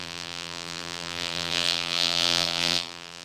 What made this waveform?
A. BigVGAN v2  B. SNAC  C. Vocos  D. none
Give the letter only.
A